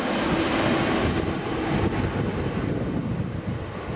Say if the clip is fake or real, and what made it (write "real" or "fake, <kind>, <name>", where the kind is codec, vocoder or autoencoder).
real